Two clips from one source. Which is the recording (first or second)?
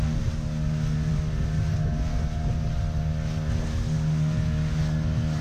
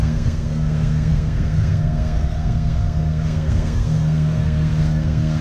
first